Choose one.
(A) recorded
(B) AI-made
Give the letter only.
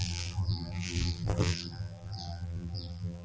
B